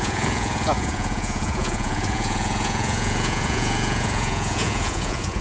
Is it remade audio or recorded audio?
remade